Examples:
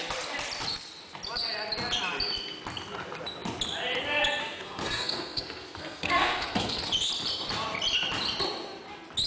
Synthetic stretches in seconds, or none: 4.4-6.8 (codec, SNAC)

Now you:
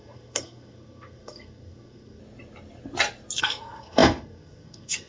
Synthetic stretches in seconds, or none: 0.0-2.2 (codec, SNAC); 3.4-5.1

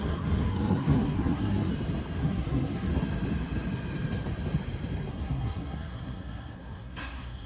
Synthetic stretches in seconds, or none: 0.0-1.7 (codec, SNAC); 2.2-2.9; 5.1-7.5

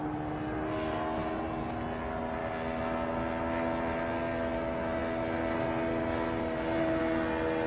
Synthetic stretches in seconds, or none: none

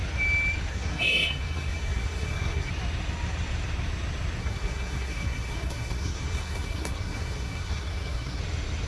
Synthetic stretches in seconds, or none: 0.7-2.7 (codec, SNAC); 4.4-8.4

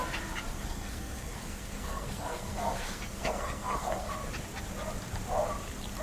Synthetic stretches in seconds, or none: 0.5-4.1 (codec, SNAC)

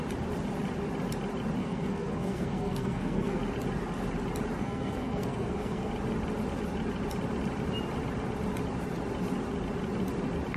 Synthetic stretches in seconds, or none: 1.6-3.4 (codec, SNAC); 4.6-5.9

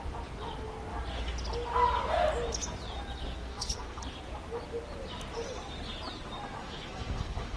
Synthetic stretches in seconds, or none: 3.3-4.0 (codec, SNAC); 6.6-7.6